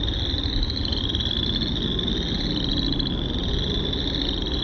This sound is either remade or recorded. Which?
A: recorded